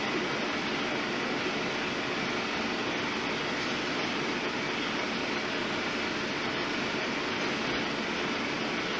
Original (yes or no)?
yes